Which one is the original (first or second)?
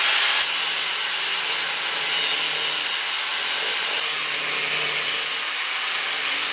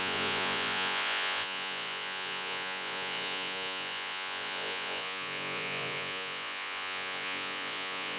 first